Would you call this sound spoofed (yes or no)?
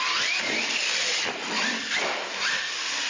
no